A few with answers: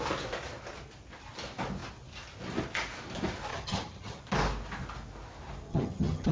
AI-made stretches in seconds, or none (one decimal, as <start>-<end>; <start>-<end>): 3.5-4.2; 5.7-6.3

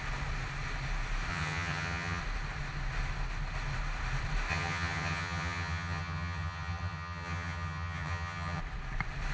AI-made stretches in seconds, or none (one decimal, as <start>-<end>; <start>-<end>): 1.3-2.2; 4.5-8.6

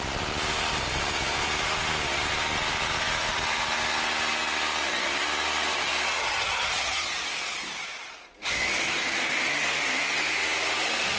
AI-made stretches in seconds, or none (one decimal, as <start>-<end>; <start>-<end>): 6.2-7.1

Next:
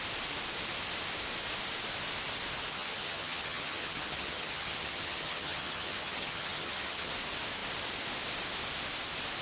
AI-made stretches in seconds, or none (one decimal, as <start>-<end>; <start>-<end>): 2.7-7.1

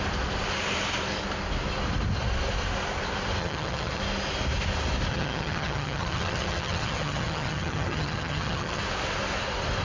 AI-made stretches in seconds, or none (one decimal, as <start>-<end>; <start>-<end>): 3.4-4.0; 5.1-8.8

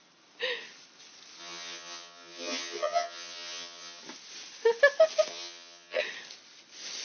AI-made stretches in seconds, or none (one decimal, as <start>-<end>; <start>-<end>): 1.4-4.0; 5.3-6.0